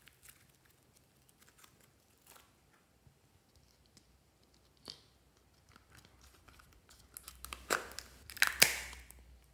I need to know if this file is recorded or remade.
recorded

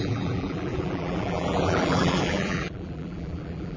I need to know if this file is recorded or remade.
remade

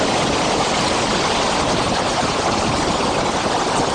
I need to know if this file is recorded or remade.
recorded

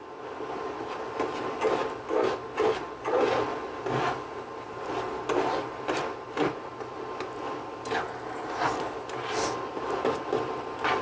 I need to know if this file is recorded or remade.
recorded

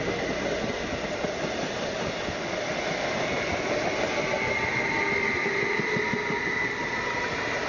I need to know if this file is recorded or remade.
recorded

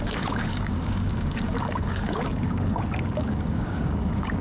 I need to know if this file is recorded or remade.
remade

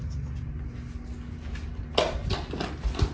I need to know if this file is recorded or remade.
recorded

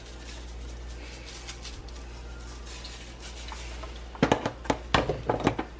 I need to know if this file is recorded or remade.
recorded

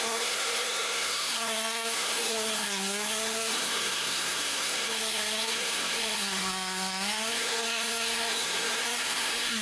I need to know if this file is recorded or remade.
remade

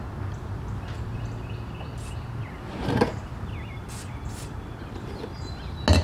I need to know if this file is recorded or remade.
recorded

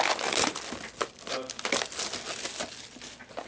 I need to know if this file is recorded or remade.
recorded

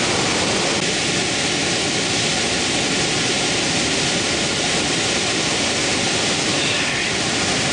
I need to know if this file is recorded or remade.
recorded